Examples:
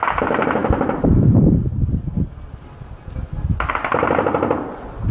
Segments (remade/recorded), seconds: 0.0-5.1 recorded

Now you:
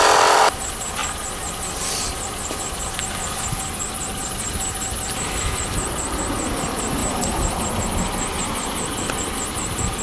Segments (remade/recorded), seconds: 0.0-10.0 recorded

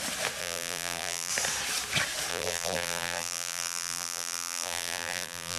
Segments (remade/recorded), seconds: 0.0-0.4 recorded; 0.4-1.3 remade; 1.3-2.3 recorded; 2.3-5.6 remade